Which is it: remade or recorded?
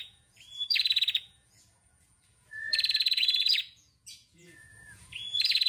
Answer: remade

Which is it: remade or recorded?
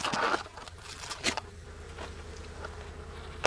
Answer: recorded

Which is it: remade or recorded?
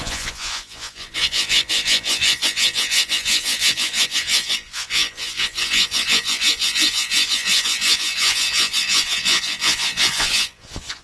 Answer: remade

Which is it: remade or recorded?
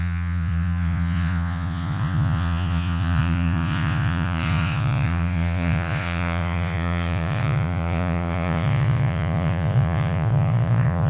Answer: remade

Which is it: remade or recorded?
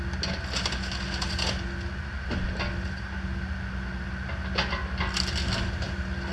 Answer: recorded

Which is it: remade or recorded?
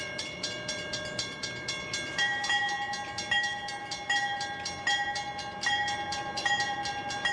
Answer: recorded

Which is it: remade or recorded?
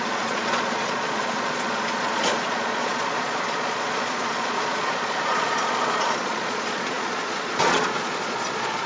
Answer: remade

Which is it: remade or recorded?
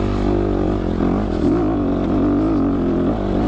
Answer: recorded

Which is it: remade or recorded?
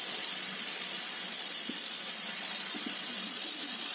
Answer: remade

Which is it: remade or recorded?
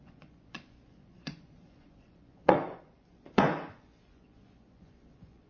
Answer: remade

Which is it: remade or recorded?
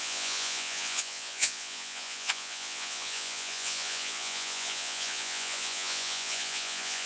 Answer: remade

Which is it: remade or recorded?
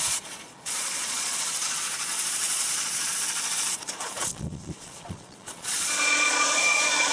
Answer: remade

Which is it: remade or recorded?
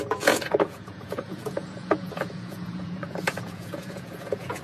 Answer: remade